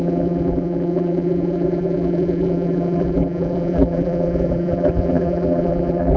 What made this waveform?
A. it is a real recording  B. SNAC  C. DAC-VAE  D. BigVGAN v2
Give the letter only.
D